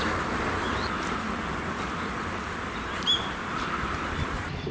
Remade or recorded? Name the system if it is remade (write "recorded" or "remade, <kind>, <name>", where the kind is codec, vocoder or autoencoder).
recorded